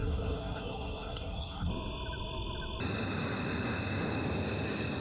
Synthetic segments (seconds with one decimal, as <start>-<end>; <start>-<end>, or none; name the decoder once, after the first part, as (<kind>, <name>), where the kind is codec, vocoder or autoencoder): 0.0-1.7 (codec, SNAC)